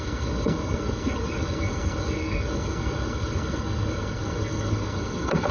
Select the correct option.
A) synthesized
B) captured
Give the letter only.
A